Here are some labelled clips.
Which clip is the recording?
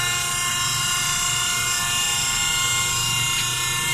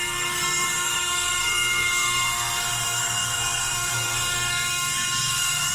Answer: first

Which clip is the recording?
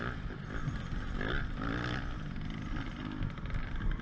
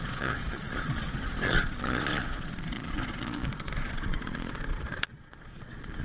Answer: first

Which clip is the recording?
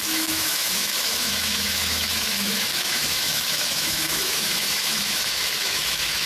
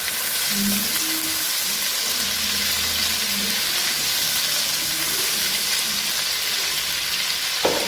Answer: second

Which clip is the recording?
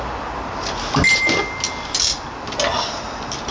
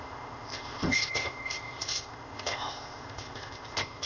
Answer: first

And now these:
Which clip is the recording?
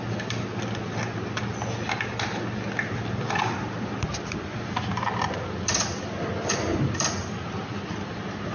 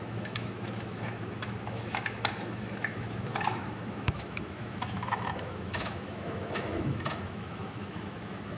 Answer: first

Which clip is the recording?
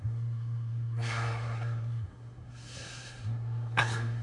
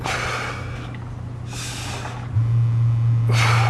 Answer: second